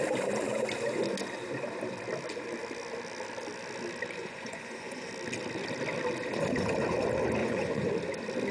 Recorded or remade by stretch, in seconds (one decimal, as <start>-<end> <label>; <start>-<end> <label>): 0.0-4.2 recorded; 4.2-5.1 remade; 5.1-7.4 recorded; 7.4-7.9 remade; 7.9-8.5 recorded